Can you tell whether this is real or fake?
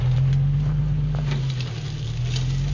real